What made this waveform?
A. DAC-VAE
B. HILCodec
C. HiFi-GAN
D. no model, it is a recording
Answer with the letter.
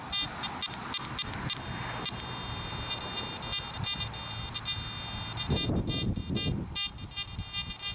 D